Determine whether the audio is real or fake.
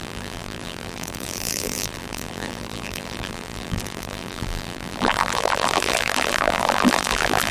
fake